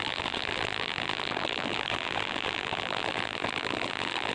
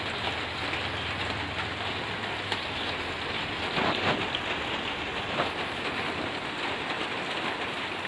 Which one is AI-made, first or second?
first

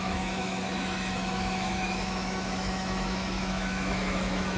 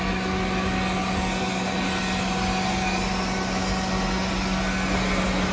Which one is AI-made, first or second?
first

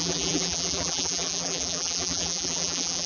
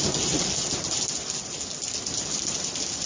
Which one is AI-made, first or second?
first